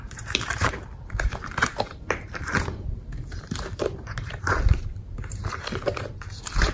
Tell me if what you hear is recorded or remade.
remade